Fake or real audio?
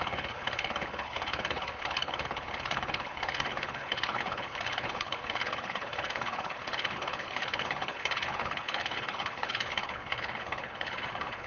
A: fake